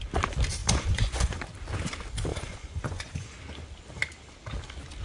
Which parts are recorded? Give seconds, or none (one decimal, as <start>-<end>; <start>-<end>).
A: 0.0-0.6; 1.4-2.3; 3.4-5.0